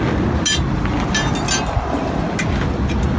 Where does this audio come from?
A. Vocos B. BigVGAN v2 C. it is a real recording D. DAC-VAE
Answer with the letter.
C